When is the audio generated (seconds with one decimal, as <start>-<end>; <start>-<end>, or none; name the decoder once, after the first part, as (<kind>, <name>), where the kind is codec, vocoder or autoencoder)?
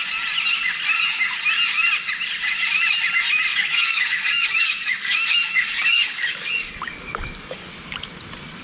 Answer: 3.5-7.7 (codec, DAC)